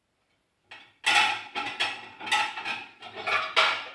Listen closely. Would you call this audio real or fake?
real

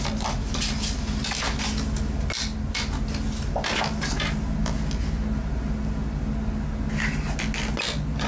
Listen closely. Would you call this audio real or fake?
real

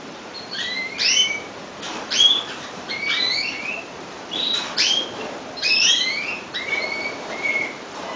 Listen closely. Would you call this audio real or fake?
fake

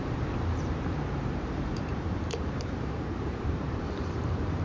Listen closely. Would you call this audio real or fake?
fake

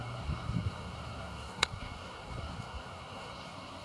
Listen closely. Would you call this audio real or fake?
fake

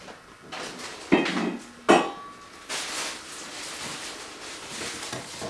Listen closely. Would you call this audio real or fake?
real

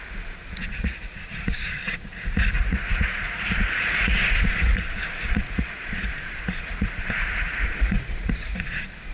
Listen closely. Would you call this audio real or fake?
fake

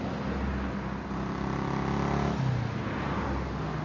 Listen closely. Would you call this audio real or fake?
real